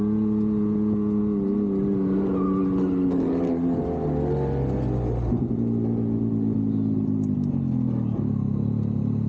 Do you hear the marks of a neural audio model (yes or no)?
no